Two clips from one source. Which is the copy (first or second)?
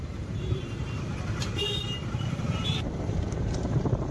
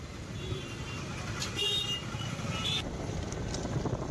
first